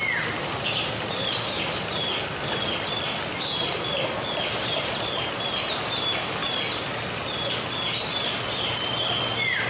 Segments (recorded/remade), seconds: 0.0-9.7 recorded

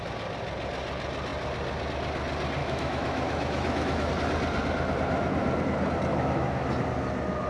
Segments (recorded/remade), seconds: 0.0-2.6 recorded; 2.6-4.1 remade; 4.1-6.1 recorded; 6.1-6.7 remade; 6.7-7.5 recorded

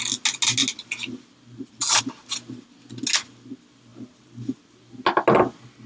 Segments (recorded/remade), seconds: 0.0-5.9 recorded

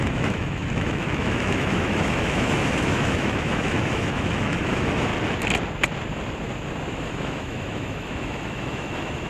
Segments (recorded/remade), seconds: 0.0-5.1 remade; 5.1-6.9 recorded; 6.9-9.3 remade